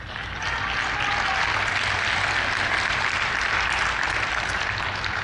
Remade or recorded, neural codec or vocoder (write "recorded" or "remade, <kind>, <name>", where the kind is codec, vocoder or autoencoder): recorded